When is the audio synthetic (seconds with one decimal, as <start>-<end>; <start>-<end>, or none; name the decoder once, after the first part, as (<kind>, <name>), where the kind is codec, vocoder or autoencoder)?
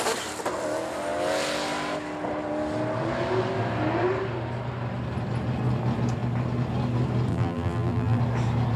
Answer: 7.3-8.2 (vocoder, BigVGAN v2)